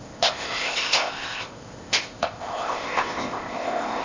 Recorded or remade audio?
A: remade